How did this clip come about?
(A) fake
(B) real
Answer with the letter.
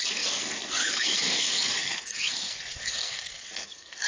A